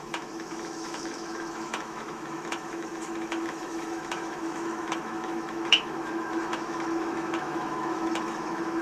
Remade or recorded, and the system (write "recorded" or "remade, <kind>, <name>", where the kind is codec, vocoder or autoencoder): remade, autoencoder, DAC-VAE